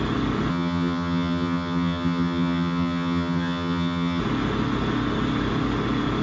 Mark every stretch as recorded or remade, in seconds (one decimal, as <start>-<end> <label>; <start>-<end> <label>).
0.0-0.5 recorded; 0.5-4.2 remade; 4.2-6.2 recorded